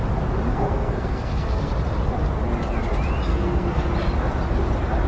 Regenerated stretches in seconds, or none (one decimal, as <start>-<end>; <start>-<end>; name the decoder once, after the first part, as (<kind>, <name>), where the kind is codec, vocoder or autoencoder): 0.5-1.7 (codec, SNAC); 3.3-3.8